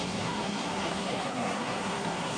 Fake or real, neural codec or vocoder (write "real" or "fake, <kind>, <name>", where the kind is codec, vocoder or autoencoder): fake, codec, SNAC